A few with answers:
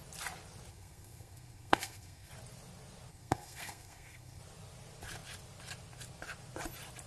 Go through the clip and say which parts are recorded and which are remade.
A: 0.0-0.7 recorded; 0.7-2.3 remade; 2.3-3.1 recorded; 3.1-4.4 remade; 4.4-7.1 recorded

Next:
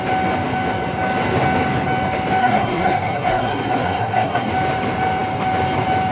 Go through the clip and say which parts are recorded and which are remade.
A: 0.0-2.4 recorded; 2.4-4.5 remade; 4.5-6.1 recorded

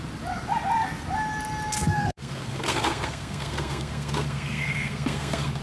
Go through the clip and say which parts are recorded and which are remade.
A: 0.0-1.8 recorded; 1.8-5.6 remade